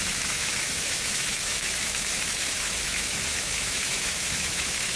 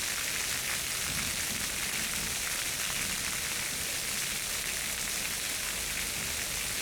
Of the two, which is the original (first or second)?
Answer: second